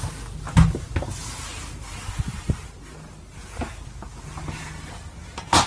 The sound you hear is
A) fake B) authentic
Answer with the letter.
B